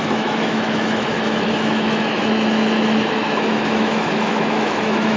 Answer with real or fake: fake